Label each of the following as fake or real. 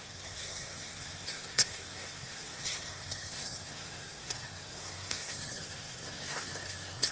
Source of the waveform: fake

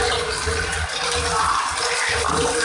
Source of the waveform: real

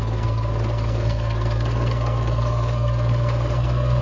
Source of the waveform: fake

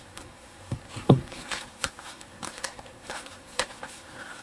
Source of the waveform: fake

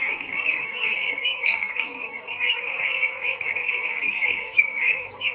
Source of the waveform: fake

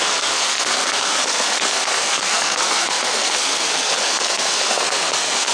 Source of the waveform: fake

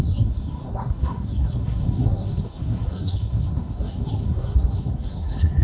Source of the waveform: fake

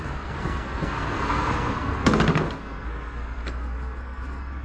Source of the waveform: fake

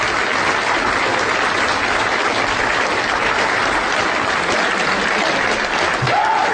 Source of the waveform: real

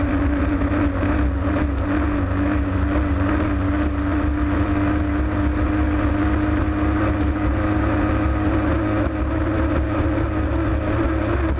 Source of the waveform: real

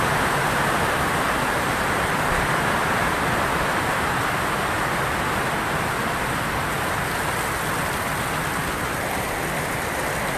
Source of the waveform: real